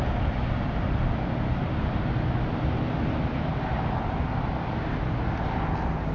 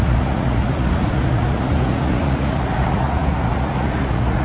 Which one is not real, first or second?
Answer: second